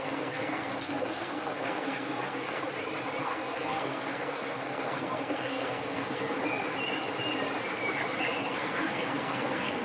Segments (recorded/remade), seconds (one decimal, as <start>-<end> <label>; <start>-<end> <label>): 0.0-2.6 remade; 2.6-3.2 recorded; 3.2-6.4 remade; 6.4-8.4 recorded; 8.4-9.8 remade

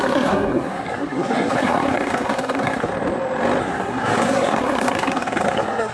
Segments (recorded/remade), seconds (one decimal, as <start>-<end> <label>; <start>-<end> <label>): 0.0-2.9 remade; 2.9-3.6 recorded; 3.6-5.9 remade

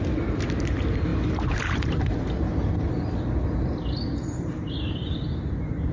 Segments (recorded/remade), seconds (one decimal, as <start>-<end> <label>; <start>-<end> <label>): 0.0-5.9 recorded

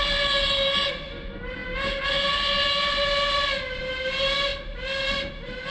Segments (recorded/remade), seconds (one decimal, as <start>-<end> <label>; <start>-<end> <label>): 0.0-5.7 recorded

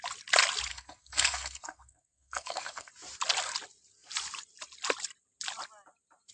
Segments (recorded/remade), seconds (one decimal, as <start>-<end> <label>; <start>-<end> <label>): 0.0-0.7 recorded; 0.7-2.9 remade; 2.9-6.3 recorded